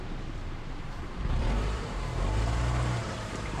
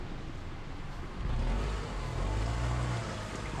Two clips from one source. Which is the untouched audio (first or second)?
second